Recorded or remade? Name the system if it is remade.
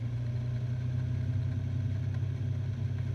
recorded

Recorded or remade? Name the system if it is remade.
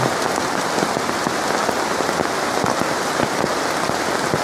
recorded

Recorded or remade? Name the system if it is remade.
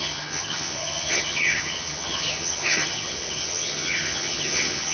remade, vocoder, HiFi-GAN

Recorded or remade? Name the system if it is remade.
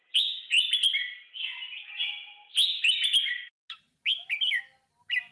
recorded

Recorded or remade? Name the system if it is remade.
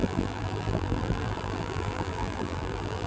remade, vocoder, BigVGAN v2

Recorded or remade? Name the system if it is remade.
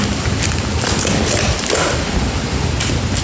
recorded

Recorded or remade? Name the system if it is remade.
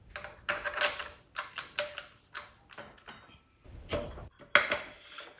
recorded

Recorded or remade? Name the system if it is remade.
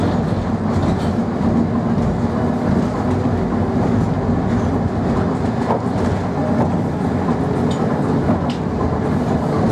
recorded